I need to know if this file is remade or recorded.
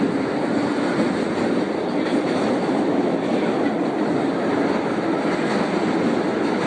remade